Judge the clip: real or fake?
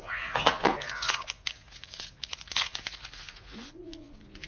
fake